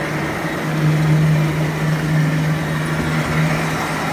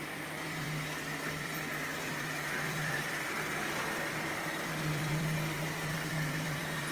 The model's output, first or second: second